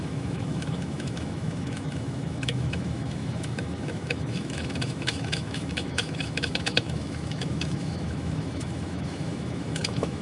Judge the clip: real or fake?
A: fake